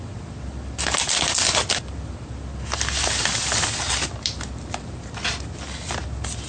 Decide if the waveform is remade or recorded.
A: recorded